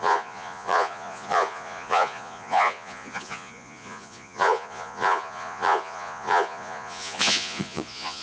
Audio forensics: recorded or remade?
remade